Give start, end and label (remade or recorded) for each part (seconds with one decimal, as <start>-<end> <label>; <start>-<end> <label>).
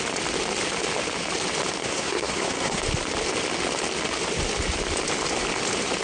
0.0-1.8 recorded; 1.8-2.8 remade; 2.8-6.0 recorded